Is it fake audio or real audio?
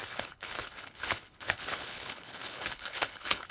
fake